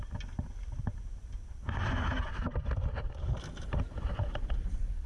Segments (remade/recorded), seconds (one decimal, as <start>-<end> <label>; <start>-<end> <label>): 0.0-2.1 recorded; 2.1-2.6 remade; 2.6-5.1 recorded

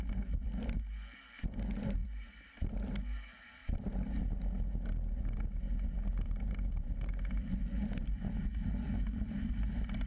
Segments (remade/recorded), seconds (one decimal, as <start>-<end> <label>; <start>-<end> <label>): 0.0-2.0 recorded; 2.0-2.5 remade; 2.5-3.6 recorded; 3.6-4.2 remade; 4.2-6.1 recorded; 6.1-7.1 remade; 7.1-10.1 recorded

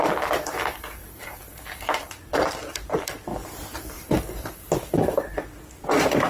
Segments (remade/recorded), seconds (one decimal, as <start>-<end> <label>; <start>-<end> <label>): 0.0-6.3 remade

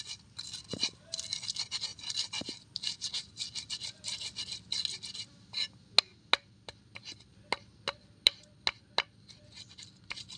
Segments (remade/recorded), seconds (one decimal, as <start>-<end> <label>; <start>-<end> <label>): 0.0-10.4 recorded

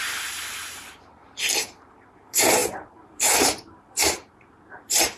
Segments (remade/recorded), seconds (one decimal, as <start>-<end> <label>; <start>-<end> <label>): 0.0-5.2 remade